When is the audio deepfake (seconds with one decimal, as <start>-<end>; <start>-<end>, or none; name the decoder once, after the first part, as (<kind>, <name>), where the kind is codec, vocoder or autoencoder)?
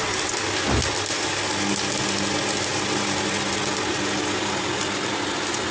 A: none